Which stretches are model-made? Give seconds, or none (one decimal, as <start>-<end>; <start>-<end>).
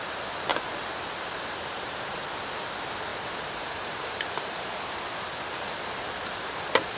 3.1-4.7